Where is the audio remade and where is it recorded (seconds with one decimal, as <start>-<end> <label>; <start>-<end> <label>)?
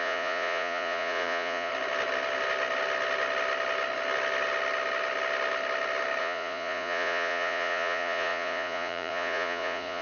0.0-1.7 remade; 1.7-6.2 recorded; 6.2-10.0 remade